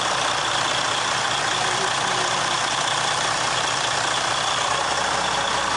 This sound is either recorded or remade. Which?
recorded